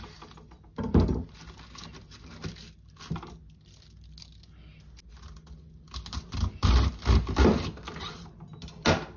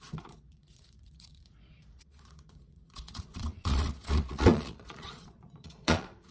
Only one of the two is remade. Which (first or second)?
second